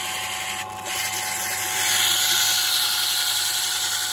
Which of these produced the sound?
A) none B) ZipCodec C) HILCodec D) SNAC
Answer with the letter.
A